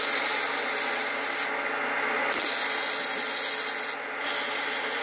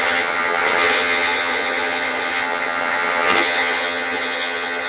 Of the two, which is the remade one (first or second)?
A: second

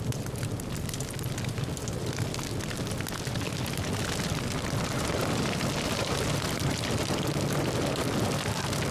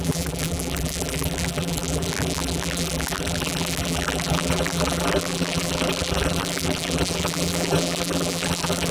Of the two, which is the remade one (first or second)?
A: second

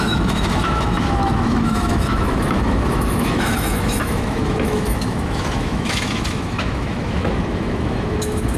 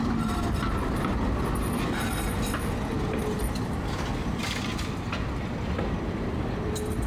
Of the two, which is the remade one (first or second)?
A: first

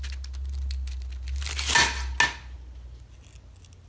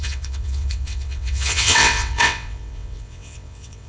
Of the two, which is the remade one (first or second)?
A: second